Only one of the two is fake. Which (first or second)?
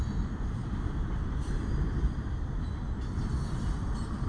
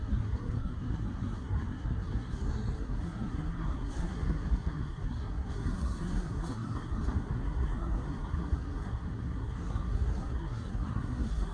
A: second